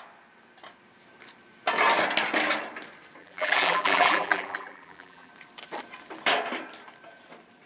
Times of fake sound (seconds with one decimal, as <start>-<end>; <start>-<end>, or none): 3.2-5.3